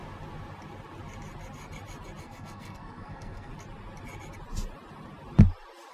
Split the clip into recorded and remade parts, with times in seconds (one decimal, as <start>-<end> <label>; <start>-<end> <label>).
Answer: 0.0-2.2 recorded; 2.2-3.5 remade; 3.5-5.9 recorded